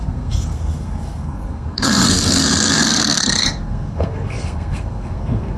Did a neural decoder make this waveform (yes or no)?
yes